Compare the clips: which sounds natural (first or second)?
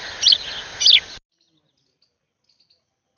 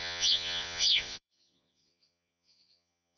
first